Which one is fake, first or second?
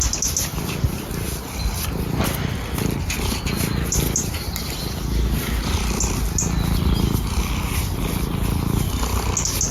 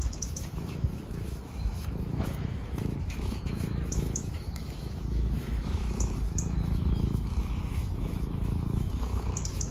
second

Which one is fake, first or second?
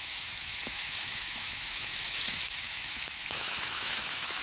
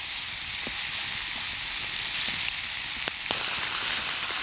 first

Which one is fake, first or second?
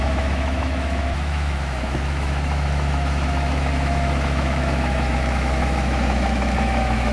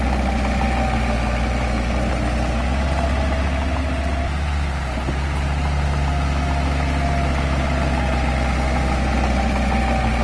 first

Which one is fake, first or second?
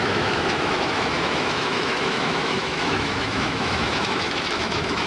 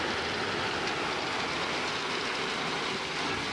first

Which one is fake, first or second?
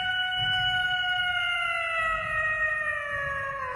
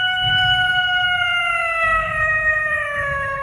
second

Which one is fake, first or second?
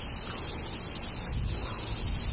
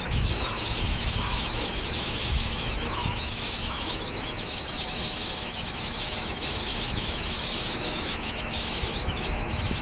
second